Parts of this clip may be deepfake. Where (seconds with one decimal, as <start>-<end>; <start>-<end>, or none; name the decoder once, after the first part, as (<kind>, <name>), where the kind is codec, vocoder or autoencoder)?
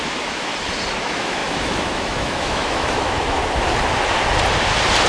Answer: 0.0-0.5 (autoencoder, DAC-VAE); 1.0-3.4